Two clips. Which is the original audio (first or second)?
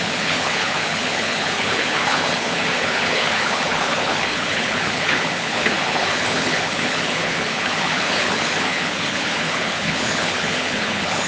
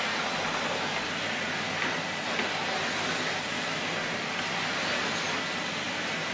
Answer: second